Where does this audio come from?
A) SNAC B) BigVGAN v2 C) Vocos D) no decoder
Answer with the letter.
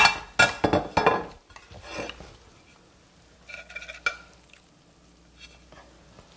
D